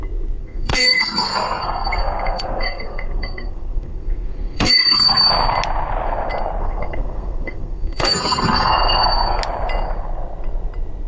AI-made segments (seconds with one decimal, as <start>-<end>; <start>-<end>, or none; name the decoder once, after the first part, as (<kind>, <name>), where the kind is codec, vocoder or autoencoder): 0.4-5.3 (codec, SNAC); 6.6-9.4